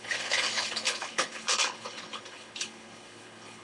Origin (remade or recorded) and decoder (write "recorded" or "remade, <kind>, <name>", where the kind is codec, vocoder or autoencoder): remade, codec, HILCodec